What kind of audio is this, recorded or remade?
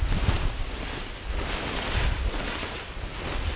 recorded